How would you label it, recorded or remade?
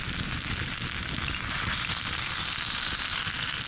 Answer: recorded